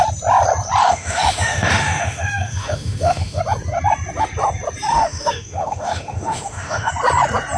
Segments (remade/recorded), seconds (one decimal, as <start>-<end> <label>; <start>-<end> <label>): 0.0-0.8 recorded; 0.8-3.4 remade; 3.4-4.9 recorded; 4.9-6.9 remade; 6.9-7.6 recorded